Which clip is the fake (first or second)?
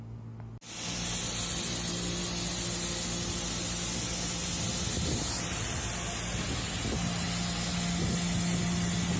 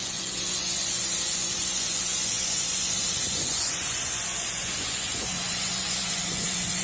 second